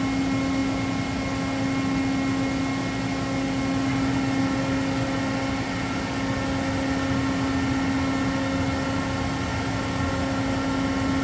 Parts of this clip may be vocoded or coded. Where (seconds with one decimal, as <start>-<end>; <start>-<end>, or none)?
none